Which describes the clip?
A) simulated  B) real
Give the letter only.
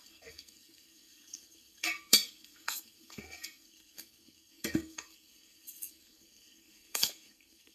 A